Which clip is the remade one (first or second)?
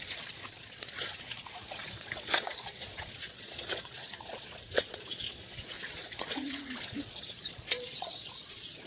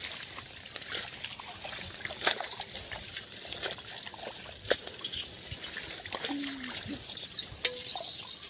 first